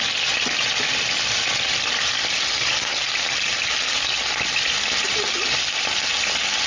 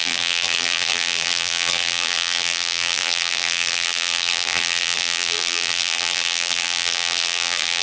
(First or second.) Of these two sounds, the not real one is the second